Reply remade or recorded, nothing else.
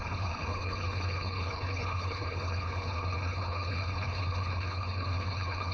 remade